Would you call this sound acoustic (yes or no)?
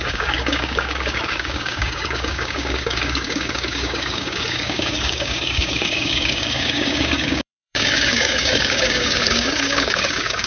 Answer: no